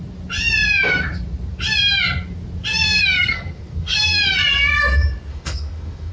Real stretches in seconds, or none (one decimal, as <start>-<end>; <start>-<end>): 0.0-2.7; 4.2-5.3